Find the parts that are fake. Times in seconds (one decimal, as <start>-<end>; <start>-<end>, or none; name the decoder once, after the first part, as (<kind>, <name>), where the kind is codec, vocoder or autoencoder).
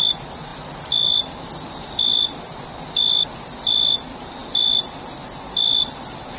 none